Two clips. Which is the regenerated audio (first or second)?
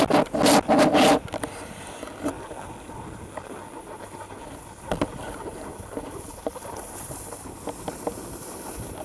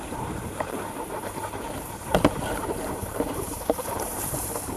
second